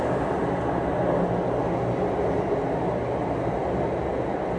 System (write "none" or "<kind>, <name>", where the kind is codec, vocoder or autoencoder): none